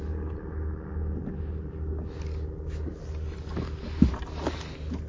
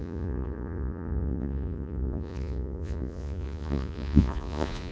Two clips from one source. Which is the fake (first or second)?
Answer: second